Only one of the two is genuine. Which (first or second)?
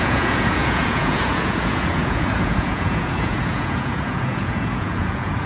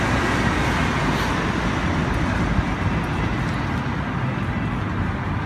second